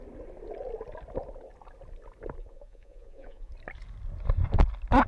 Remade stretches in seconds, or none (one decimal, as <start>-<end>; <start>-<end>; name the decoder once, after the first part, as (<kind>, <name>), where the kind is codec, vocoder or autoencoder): 2.4-3.5 (vocoder, Vocos)